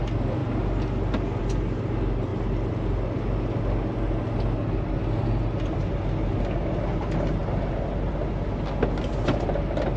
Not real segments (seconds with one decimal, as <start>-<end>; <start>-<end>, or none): none